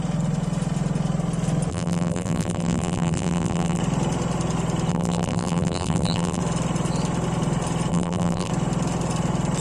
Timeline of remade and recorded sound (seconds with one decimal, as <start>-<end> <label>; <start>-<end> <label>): 0.0-1.7 recorded; 1.7-3.8 remade; 3.8-4.9 recorded; 4.9-6.4 remade; 6.4-7.9 recorded; 7.9-8.5 remade; 8.5-9.6 recorded